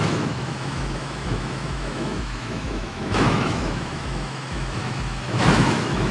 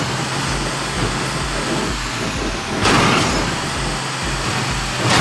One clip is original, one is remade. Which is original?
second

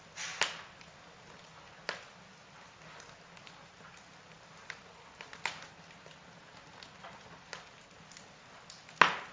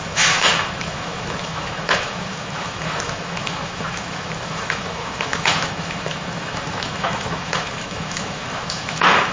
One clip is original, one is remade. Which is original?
first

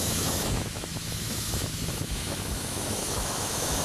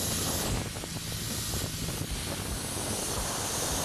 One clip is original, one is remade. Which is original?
second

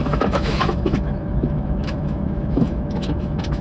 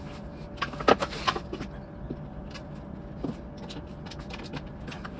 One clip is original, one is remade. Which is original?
second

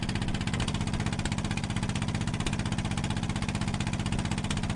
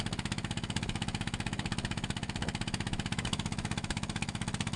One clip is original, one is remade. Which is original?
first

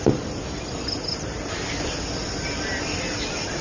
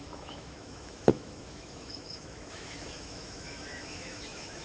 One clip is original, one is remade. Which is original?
first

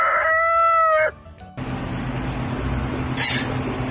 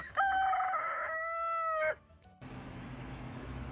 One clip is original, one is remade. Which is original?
first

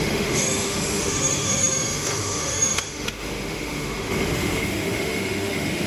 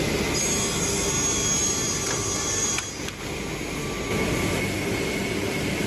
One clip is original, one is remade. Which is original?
second